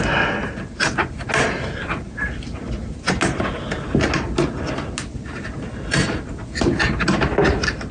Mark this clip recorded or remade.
recorded